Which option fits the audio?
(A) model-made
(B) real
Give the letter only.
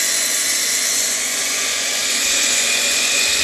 A